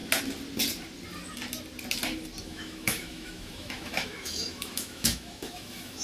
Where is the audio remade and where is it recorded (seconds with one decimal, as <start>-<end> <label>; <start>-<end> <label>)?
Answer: 0.0-2.4 recorded; 2.4-6.0 remade